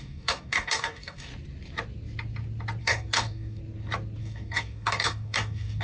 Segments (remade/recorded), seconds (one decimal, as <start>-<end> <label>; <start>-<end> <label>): 0.0-1.3 remade; 1.3-2.8 recorded; 2.8-3.6 remade; 3.6-4.2 recorded; 4.2-5.8 remade